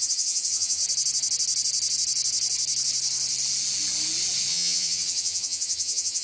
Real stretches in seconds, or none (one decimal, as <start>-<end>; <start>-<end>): 0.8-4.5